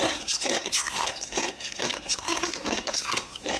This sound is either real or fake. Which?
fake